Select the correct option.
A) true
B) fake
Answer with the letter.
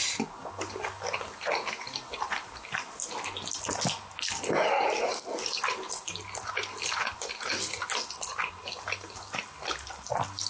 A